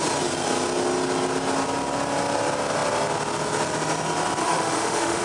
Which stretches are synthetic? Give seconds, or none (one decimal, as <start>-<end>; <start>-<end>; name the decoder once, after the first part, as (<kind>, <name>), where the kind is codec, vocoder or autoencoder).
4.4-5.2 (autoencoder, DAC-VAE)